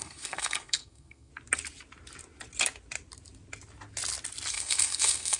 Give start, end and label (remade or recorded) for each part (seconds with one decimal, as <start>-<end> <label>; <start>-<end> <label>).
0.0-1.3 remade; 1.3-4.5 recorded; 4.5-5.4 remade

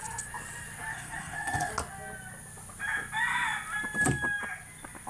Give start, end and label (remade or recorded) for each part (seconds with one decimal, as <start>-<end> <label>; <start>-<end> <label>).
0.0-0.9 recorded; 0.9-1.7 remade; 1.7-5.1 recorded

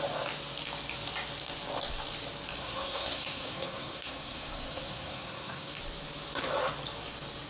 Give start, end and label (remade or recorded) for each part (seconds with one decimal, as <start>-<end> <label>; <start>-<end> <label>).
0.0-2.6 recorded; 2.6-5.7 remade; 5.7-7.5 recorded

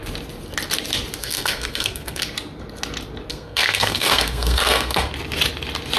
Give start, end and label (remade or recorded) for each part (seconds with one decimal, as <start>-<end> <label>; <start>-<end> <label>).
0.0-1.2 recorded; 1.2-2.2 remade; 2.2-3.3 recorded; 3.3-5.1 remade; 5.1-6.0 recorded